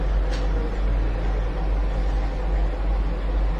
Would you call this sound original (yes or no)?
yes